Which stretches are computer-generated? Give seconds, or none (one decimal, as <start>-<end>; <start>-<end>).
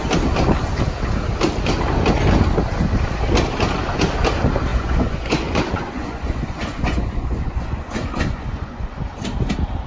4.7-9.0